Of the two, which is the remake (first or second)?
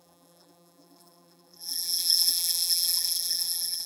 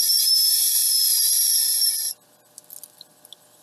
first